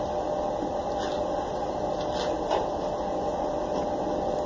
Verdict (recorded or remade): recorded